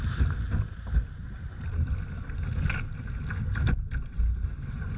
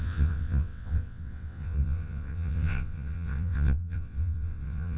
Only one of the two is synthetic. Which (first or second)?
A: second